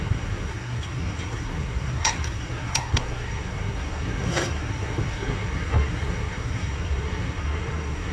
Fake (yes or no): yes